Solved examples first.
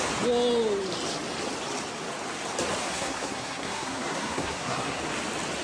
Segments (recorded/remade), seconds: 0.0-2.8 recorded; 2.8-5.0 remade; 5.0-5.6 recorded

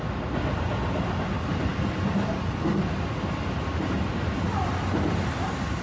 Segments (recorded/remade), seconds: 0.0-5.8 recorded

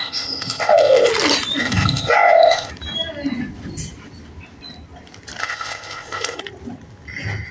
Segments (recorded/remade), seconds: 0.0-1.1 remade; 1.1-1.6 recorded; 1.6-2.7 remade; 2.7-5.4 recorded; 5.4-6.4 remade; 6.4-7.5 recorded

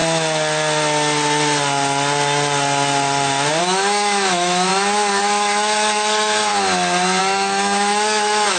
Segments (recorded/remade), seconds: 0.0-3.6 recorded; 3.6-4.7 remade; 4.7-5.2 recorded; 5.2-6.5 remade; 6.5-7.2 recorded; 7.2-8.6 remade

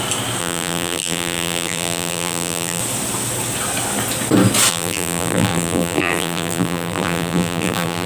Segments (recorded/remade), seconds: 0.0-0.4 recorded; 0.4-2.8 remade; 2.8-4.7 recorded; 4.7-8.1 remade

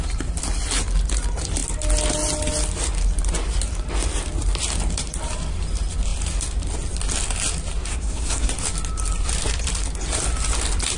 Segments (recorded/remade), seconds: 0.0-7.9 recorded; 7.9-8.5 remade; 8.5-11.0 recorded

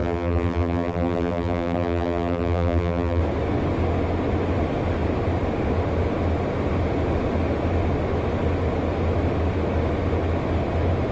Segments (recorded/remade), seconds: 0.0-3.2 remade; 3.2-11.1 recorded

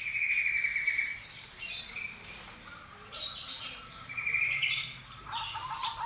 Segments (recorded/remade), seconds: 0.0-6.1 recorded